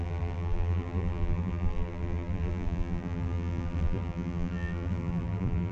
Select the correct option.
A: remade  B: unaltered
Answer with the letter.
A